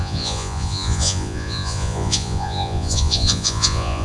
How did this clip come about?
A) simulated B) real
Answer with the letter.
A